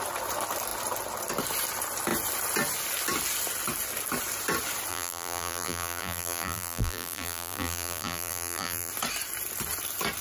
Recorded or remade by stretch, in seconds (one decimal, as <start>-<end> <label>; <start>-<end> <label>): 0.0-4.9 recorded; 4.9-8.9 remade; 8.9-10.2 recorded